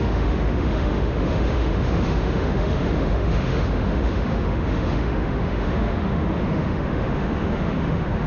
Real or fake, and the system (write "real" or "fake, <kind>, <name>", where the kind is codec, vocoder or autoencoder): fake, autoencoder, DAC-VAE